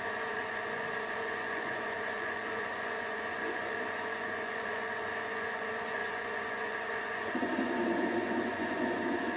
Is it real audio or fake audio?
fake